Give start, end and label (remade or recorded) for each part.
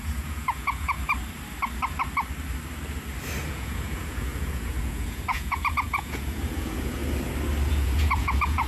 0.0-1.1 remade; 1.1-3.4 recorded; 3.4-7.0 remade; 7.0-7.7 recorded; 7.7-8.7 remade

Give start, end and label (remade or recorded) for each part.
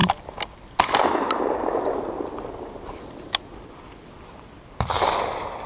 0.0-5.7 recorded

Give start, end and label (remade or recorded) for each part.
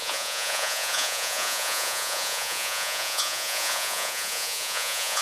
0.0-5.2 remade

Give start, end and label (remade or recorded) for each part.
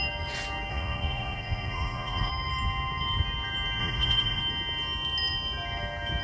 0.0-0.7 recorded; 0.7-2.3 remade; 2.3-3.8 recorded; 3.8-4.4 remade; 4.4-6.2 recorded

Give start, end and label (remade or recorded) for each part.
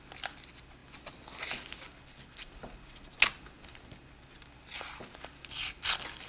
0.0-6.3 recorded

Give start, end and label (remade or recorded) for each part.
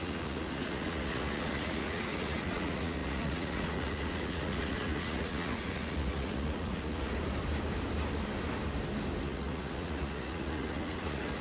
0.0-7.1 remade; 7.1-9.2 recorded; 9.2-11.4 remade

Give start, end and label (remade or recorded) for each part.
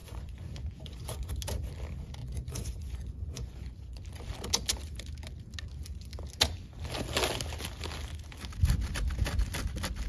0.0-1.3 remade; 1.3-2.2 recorded; 2.2-4.0 remade; 4.0-10.1 recorded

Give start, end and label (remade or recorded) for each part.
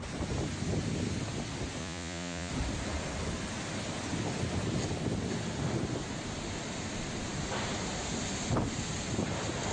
0.0-1.8 recorded; 1.8-2.5 remade; 2.5-9.7 recorded